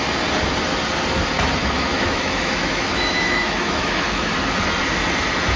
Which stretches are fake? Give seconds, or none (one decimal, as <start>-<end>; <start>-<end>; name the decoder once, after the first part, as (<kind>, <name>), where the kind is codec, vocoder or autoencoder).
1.6-4.3 (autoencoder, DAC-VAE)